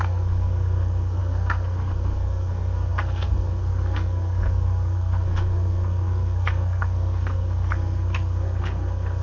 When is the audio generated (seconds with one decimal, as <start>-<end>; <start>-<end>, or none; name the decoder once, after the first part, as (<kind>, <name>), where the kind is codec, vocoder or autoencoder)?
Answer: 0.0-9.2 (codec, SNAC)